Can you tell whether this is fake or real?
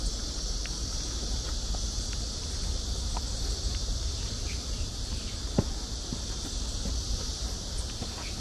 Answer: fake